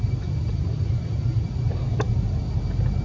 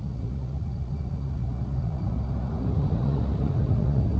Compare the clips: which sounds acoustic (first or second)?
first